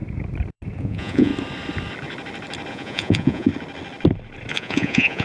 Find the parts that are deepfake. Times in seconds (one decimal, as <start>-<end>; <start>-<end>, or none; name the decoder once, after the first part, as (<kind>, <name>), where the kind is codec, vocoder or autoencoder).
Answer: 0.8-1.3 (vocoder, Vocos); 2.7-3.5; 4.5-5.2